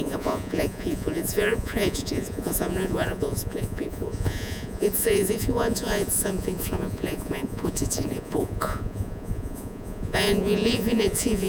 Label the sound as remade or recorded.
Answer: remade